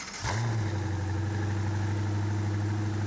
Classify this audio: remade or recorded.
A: recorded